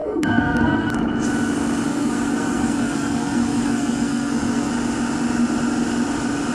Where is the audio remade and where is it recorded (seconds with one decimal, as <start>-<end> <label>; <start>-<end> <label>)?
0.0-0.9 remade; 0.9-1.9 recorded; 1.9-4.7 remade; 4.7-6.5 recorded